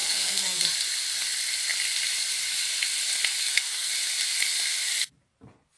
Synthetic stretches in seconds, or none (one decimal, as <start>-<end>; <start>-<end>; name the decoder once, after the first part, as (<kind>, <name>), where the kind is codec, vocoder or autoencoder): 0.0-0.6 (codec, SNAC); 3.4-3.9